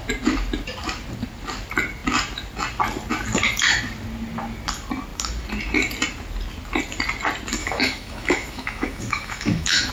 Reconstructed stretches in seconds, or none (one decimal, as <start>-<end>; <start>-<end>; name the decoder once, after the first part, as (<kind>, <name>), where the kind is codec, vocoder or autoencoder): 7.6-9.9 (autoencoder, DAC-VAE)